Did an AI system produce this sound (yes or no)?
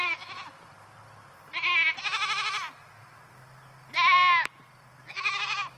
no